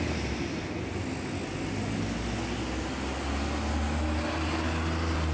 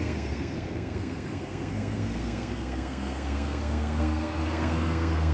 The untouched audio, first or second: first